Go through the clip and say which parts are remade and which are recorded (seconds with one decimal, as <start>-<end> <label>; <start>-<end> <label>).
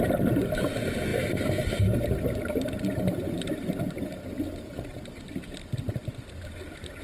0.0-7.0 recorded